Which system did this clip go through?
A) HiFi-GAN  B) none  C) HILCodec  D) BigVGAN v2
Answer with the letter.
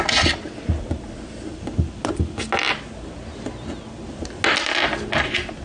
B